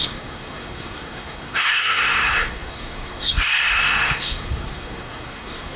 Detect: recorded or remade remade